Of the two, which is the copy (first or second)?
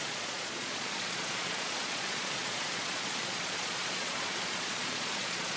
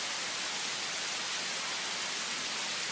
first